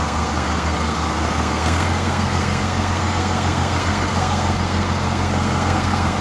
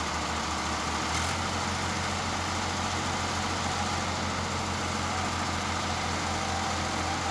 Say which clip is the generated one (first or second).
first